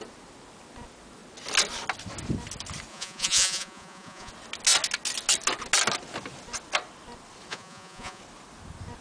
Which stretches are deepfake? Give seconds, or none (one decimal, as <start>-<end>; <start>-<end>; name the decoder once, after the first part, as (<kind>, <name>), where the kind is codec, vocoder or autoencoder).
2.9-4.3 (vocoder, Vocos); 7.5-8.2